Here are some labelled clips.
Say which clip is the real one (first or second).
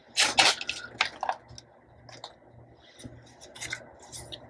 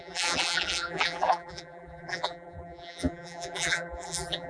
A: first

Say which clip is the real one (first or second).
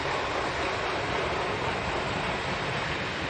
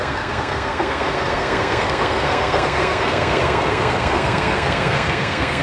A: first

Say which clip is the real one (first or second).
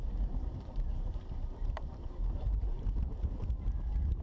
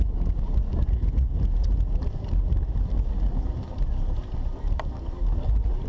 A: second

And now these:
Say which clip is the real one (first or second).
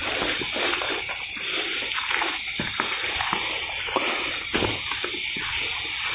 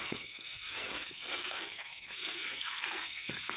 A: first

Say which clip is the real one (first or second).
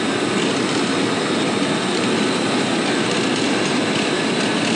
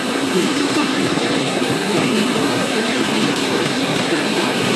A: first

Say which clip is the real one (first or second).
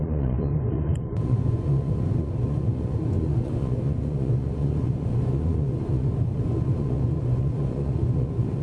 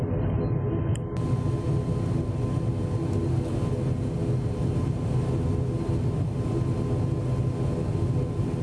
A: second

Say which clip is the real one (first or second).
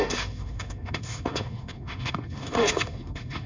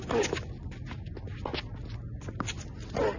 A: second